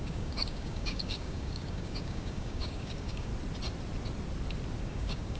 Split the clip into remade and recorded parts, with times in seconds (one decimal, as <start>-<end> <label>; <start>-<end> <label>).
0.0-3.3 remade; 3.3-4.8 recorded; 4.8-5.4 remade